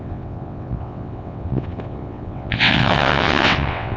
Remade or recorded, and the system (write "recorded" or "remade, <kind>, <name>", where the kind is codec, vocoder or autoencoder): remade, vocoder, WaveNeXt